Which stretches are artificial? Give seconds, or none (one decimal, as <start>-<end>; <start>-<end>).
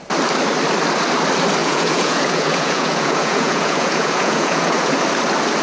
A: 1.6-4.9